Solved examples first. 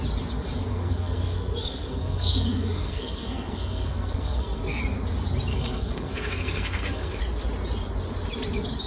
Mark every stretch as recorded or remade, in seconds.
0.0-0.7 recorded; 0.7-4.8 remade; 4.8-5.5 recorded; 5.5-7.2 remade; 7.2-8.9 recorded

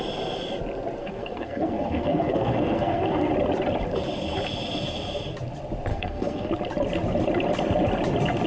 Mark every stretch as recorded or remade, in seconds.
0.0-1.0 recorded; 1.0-3.3 remade; 3.3-5.9 recorded; 5.9-6.5 remade; 6.5-8.5 recorded

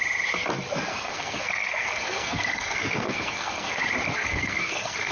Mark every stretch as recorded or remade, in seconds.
0.0-0.9 recorded; 0.9-3.8 remade; 3.8-4.2 recorded; 4.2-5.1 remade

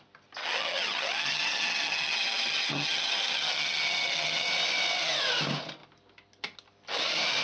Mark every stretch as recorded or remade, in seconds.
0.0-0.4 recorded; 0.4-4.5 remade; 4.5-7.4 recorded

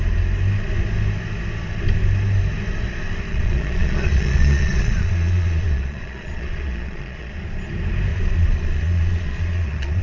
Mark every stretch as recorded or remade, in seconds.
0.0-3.3 recorded; 3.3-7.3 remade; 7.3-8.1 recorded; 8.1-10.0 remade

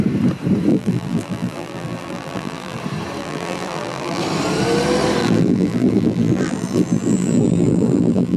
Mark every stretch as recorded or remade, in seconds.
0.0-0.7 recorded; 0.7-2.8 remade; 2.8-3.2 recorded; 3.2-4.2 remade; 4.2-5.2 recorded; 5.2-8.4 remade

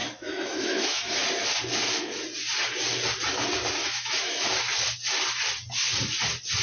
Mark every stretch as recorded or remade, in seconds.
0.0-1.2 remade; 1.2-3.8 recorded; 3.8-4.6 remade; 4.6-6.6 recorded

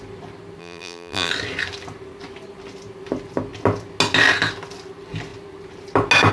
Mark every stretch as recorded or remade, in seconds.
0.0-0.6 recorded; 0.6-1.3 remade; 1.3-6.3 recorded